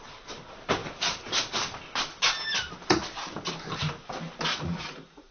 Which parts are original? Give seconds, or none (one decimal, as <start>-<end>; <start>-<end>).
0.0-4.5